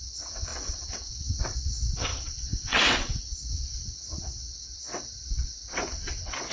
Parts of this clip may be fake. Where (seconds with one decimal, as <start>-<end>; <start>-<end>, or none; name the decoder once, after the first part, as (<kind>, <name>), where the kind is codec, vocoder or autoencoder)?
0.0-6.5 (vocoder, WaveNeXt)